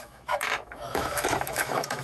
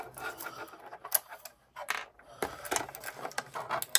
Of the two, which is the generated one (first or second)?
first